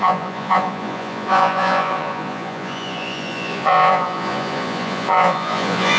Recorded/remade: remade